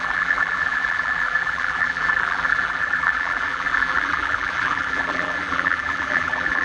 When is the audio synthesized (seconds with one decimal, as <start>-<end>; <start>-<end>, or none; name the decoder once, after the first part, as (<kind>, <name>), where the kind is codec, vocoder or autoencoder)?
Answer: 0.0-6.6 (vocoder, BigVGAN v2)